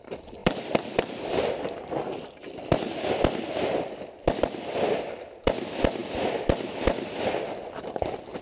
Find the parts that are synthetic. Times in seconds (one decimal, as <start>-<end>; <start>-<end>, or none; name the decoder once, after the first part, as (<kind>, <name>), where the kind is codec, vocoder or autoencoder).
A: none